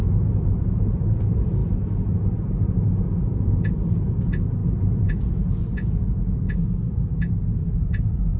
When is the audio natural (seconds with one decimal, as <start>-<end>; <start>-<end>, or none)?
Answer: none